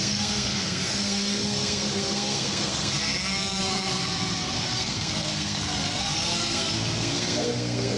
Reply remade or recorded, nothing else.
remade